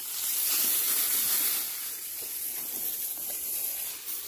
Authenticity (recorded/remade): recorded